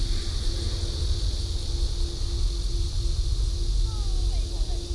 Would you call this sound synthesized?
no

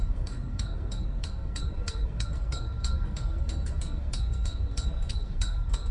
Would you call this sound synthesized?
yes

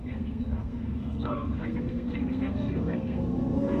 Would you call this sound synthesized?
yes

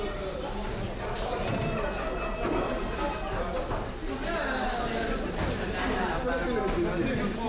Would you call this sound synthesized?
no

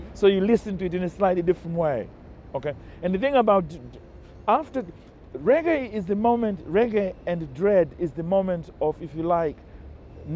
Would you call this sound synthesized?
no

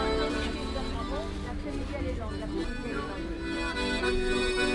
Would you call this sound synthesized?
no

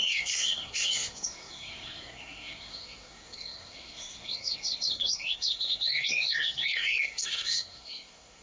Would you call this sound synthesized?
yes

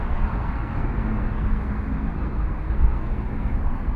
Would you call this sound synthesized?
yes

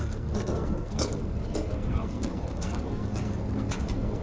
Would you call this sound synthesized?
yes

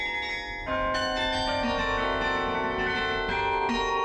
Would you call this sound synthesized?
no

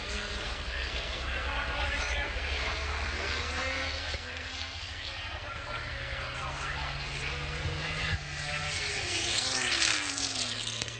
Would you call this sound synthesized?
yes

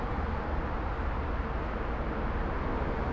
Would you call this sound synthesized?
no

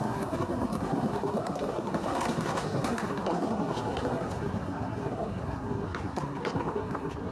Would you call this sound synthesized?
yes